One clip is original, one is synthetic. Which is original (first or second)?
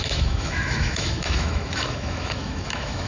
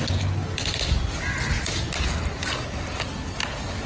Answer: second